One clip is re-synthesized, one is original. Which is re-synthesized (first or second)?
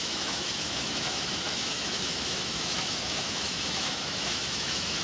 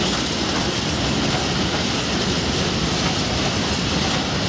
first